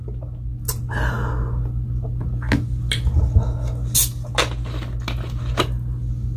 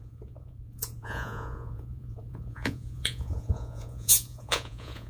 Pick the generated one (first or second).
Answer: second